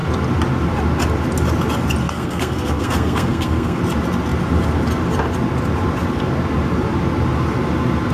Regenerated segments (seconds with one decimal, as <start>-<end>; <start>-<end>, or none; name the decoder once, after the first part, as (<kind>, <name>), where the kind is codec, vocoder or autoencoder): 2.0-3.8 (codec, SNAC)